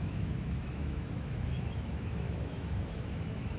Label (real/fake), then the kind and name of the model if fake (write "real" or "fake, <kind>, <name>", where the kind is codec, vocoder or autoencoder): fake, autoencoder, DAC-VAE